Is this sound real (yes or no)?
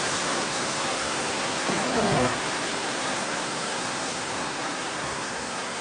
no